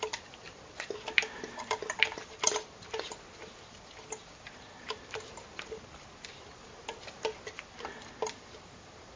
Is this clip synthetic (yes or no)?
yes